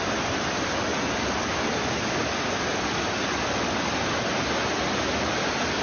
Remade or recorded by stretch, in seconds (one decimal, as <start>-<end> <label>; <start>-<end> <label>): 0.0-5.8 recorded